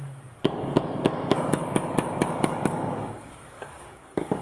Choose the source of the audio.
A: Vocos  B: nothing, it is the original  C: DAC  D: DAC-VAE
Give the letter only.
C